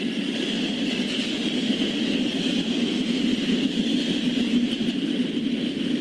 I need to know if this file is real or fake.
real